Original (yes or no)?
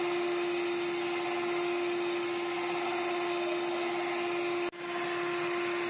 yes